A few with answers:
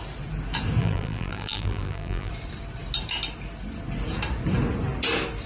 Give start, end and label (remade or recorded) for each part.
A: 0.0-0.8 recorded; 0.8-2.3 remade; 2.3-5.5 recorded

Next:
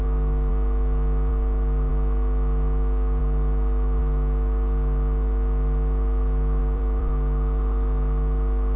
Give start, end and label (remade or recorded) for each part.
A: 0.0-0.5 remade; 0.5-1.3 recorded; 1.3-1.9 remade; 1.9-3.2 recorded; 3.2-8.8 remade

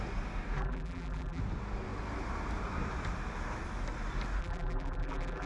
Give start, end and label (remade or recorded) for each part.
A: 0.0-0.6 recorded; 0.6-1.4 remade; 1.4-4.4 recorded; 4.4-5.5 remade

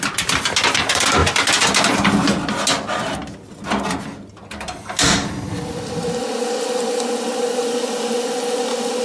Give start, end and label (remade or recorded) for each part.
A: 0.0-9.0 recorded

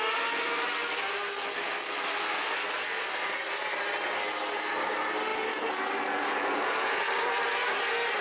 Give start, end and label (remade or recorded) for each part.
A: 0.0-8.2 recorded

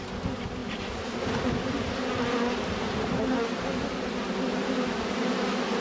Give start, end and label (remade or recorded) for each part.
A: 0.0-3.7 recorded; 3.7-4.6 remade; 4.6-5.8 recorded

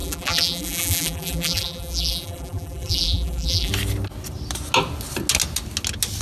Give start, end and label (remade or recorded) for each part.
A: 0.0-3.7 remade; 3.7-6.2 recorded